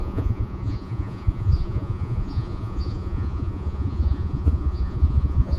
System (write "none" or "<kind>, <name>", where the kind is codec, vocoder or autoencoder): vocoder, Vocos